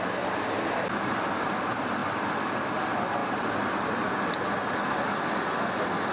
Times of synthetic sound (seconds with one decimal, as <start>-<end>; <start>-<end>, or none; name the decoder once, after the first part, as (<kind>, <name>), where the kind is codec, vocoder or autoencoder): none